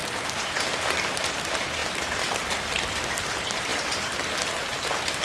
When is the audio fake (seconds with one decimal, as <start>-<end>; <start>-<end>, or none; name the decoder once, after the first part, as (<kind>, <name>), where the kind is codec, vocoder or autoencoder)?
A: none